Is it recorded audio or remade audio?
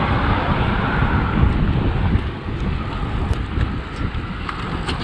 recorded